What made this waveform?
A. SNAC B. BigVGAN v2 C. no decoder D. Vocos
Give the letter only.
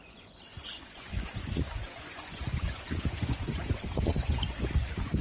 D